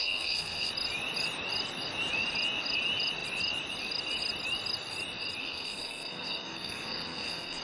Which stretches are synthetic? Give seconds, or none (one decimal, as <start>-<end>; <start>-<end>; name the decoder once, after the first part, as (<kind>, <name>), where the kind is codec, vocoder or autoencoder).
0.0-0.7 (codec, SNAC); 5.4-7.6